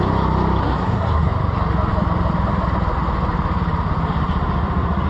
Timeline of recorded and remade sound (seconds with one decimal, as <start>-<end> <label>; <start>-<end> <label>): 0.0-0.6 recorded; 0.6-1.3 remade; 1.3-5.1 recorded